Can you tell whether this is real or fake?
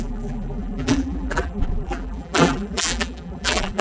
fake